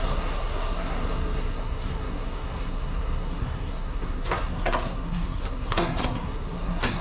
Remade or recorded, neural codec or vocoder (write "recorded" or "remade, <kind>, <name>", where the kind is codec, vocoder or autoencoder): remade, codec, SNAC